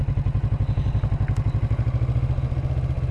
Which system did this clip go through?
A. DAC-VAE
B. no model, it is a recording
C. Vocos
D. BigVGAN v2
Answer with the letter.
B